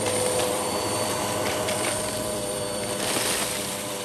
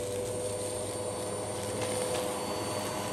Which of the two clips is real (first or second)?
second